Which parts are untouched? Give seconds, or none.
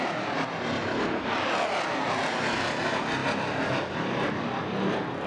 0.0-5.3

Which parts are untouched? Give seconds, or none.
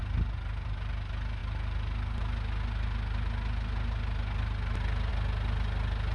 0.0-6.1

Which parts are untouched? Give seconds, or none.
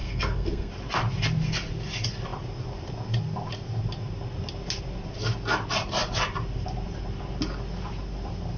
0.7-8.6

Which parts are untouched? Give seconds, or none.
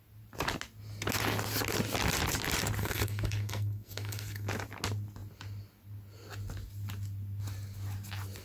0.0-2.8; 4.5-8.4